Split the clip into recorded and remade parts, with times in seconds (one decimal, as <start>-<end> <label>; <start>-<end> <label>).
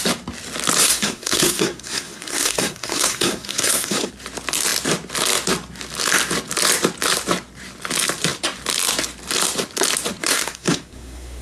0.0-0.8 recorded; 0.8-4.1 remade; 4.1-10.2 recorded; 10.2-11.4 remade